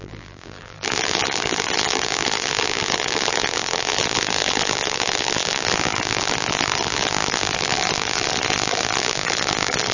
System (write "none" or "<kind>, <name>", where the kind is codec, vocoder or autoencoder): vocoder, BigVGAN v2